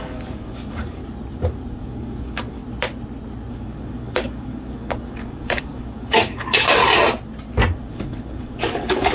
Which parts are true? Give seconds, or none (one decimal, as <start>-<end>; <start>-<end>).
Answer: 1.0-1.8; 2.6-3.5; 6.8-7.9